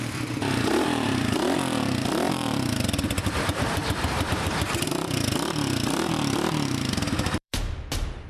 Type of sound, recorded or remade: remade